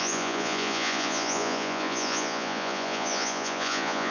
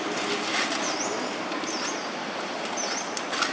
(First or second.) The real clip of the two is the second